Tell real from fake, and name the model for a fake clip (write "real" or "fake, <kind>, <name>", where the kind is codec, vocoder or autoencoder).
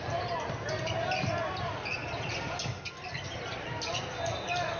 real